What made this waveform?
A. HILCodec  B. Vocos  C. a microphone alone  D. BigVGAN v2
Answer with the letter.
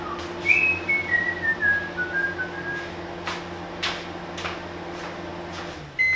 C